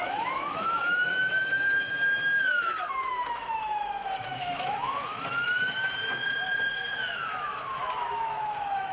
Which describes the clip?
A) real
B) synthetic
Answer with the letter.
B